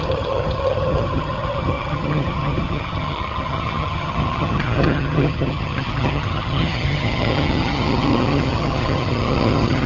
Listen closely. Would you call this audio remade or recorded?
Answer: remade